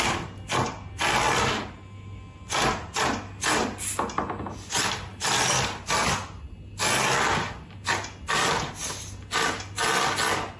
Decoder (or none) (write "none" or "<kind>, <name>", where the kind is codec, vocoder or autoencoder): none